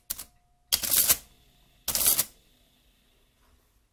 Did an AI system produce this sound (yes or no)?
no